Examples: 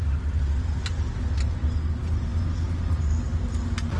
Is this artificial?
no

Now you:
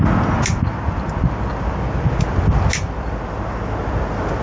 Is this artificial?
no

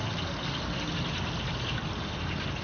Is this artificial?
no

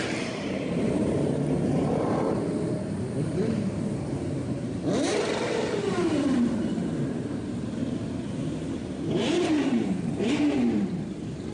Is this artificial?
yes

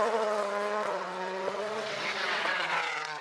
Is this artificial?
yes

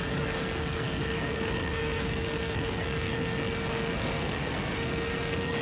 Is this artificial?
yes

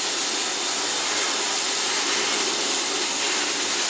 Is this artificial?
no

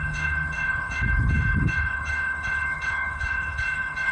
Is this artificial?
yes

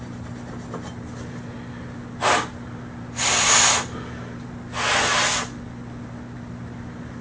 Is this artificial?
no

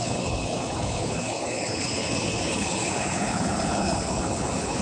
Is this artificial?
yes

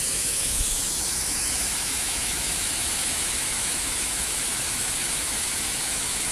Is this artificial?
yes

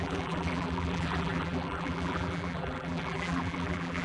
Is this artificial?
yes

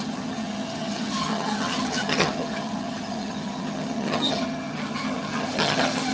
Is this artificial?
yes